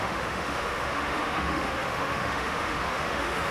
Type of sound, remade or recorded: remade